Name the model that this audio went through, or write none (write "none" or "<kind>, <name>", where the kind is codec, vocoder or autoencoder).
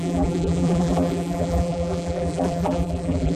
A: vocoder, BigVGAN v2